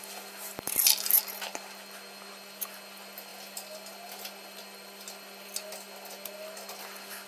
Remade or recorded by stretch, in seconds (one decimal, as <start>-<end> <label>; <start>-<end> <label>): 0.0-7.3 recorded